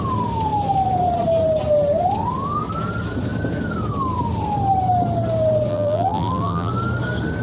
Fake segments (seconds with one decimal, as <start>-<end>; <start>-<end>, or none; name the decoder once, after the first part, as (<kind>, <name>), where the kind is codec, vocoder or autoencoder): 5.7-6.7 (vocoder, BigVGAN v2)